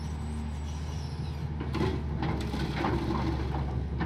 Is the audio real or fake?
real